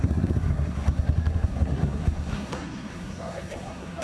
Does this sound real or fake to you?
fake